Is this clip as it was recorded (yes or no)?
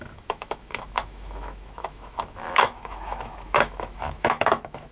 no